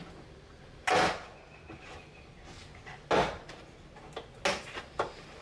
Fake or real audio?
real